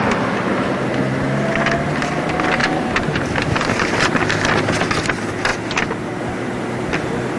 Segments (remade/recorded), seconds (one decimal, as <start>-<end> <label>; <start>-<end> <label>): 0.0-0.5 recorded; 0.5-1.3 remade; 1.3-2.6 recorded; 2.6-4.1 remade; 4.1-7.4 recorded